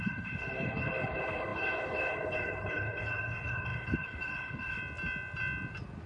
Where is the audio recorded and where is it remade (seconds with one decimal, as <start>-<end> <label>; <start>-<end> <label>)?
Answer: 0.0-4.8 remade; 4.8-6.1 recorded